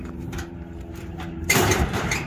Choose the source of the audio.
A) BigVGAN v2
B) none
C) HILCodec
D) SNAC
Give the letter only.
A